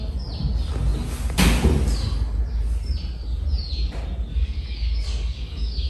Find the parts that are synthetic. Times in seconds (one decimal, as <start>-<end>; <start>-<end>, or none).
4.3-5.9